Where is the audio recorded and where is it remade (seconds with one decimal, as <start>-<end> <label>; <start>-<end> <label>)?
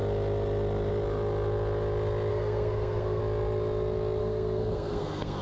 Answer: 0.0-2.3 recorded; 2.3-3.2 remade; 3.2-4.2 recorded; 4.2-5.4 remade